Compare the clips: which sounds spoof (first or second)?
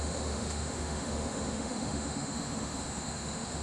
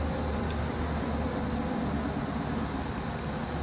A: first